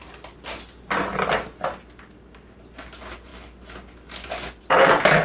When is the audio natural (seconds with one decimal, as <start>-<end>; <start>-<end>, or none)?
0.0-5.2